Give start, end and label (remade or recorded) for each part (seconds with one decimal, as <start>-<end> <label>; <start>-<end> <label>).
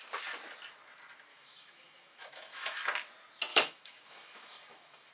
0.0-1.3 recorded; 1.3-2.8 remade; 2.8-3.5 recorded; 3.5-5.1 remade